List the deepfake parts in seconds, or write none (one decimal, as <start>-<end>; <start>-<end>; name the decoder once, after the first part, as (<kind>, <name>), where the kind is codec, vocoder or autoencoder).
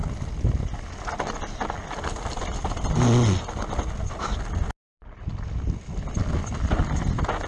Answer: none